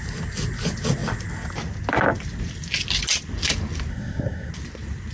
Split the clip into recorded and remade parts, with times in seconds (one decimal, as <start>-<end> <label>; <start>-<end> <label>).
0.0-3.9 recorded; 3.9-4.5 remade; 4.5-5.1 recorded